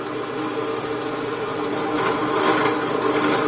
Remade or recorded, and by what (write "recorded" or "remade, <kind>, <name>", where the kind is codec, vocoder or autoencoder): recorded